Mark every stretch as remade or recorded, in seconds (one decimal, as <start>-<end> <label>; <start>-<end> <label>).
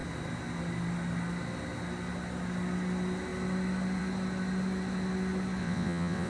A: 0.0-5.6 recorded; 5.6-6.3 remade